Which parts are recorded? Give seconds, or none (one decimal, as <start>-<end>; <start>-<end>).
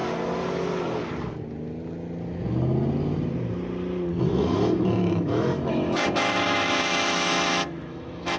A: 0.0-4.2